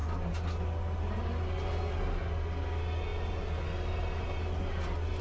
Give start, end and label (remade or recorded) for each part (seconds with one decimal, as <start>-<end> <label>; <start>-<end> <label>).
0.0-5.2 recorded